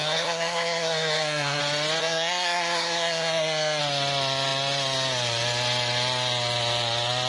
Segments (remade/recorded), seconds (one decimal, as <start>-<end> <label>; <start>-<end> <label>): 0.0-1.6 remade; 1.6-2.0 recorded; 2.0-3.8 remade; 3.8-7.3 recorded